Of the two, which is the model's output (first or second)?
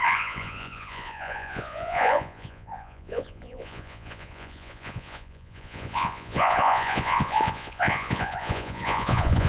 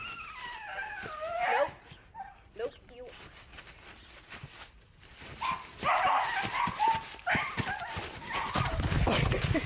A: first